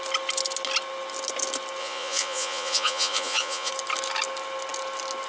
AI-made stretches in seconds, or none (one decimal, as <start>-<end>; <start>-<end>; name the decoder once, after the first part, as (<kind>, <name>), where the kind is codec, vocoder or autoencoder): 1.8-3.7 (vocoder, Vocos)